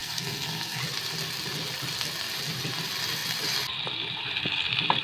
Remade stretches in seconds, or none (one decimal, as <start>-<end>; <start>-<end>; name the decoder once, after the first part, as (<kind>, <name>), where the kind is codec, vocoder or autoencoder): 0.0-0.8 (codec, SNAC)